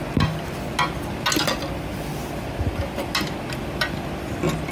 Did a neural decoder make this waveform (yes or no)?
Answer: no